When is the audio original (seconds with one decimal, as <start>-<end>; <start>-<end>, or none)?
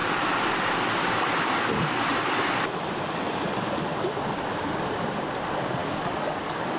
0.0-5.8